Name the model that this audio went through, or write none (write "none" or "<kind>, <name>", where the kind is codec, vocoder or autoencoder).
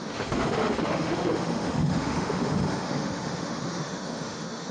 autoencoder, DAC-VAE